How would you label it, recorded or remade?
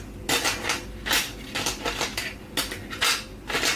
recorded